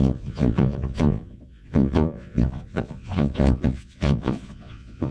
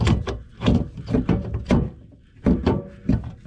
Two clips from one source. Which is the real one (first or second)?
second